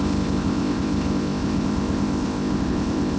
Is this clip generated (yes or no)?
yes